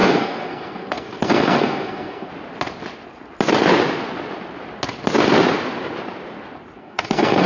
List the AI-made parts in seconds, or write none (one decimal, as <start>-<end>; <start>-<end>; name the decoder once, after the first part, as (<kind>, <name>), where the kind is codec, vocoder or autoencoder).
0.0-2.3 (codec, SNAC); 6.8-7.5